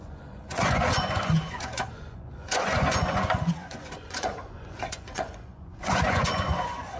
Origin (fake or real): fake